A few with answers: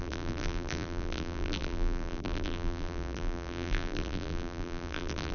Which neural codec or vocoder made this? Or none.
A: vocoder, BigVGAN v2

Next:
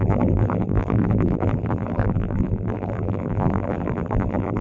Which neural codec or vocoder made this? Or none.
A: vocoder, BigVGAN v2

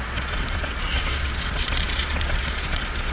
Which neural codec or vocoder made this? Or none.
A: vocoder, Vocos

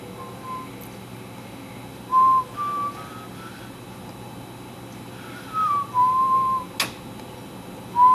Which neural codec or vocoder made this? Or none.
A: none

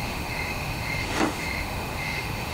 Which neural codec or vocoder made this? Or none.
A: autoencoder, DAC-VAE